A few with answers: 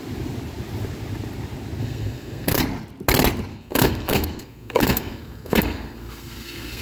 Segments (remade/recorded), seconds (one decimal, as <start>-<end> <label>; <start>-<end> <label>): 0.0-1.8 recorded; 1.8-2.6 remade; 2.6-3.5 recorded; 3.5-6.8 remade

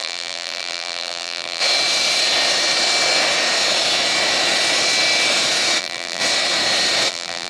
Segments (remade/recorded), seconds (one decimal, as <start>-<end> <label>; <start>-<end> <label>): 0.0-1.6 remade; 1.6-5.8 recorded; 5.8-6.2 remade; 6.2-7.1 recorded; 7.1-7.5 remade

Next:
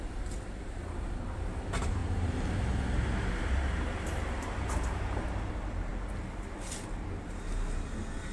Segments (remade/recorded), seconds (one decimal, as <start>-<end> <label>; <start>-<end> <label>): 0.0-2.0 recorded; 2.0-5.5 remade; 5.5-8.3 recorded

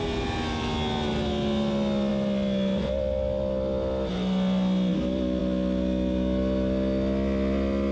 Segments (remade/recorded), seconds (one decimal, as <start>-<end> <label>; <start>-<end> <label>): 0.0-7.9 recorded